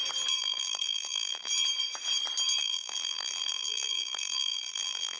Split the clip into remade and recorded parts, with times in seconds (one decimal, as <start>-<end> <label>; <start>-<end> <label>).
0.0-0.4 recorded; 0.4-1.5 remade; 1.5-2.6 recorded; 2.6-5.2 remade